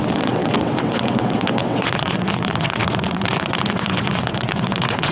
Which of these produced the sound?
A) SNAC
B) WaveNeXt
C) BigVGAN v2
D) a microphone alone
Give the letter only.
B